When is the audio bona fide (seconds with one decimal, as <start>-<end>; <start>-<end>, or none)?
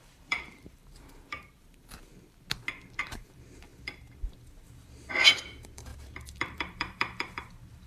2.1-3.0